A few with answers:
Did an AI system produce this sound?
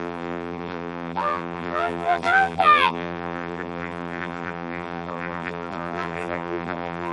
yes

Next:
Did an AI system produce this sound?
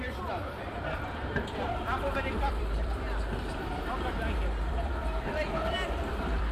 yes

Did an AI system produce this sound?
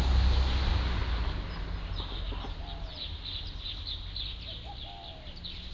no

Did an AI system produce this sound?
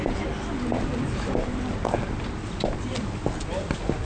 no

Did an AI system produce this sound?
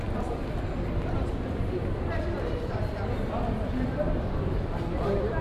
yes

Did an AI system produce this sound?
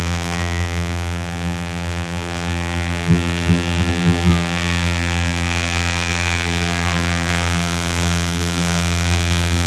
yes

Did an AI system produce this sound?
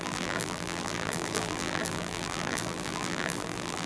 yes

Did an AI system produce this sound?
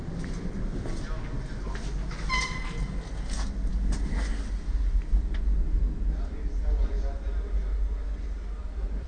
no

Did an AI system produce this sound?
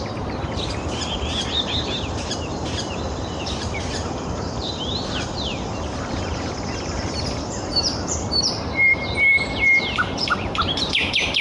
yes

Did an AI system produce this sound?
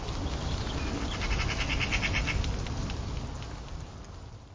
no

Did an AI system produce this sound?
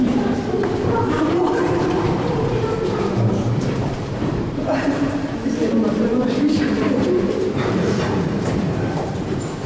yes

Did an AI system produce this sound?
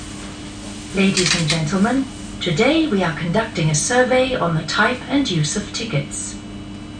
no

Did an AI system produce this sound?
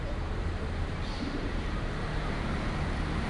yes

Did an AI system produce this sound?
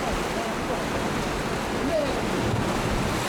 no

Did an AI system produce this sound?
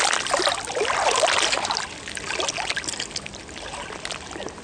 no